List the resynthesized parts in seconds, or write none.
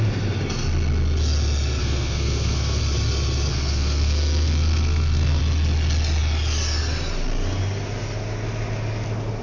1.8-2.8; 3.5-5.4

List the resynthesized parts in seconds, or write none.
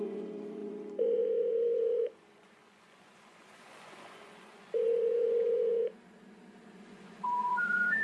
0.0-5.8; 6.8-8.0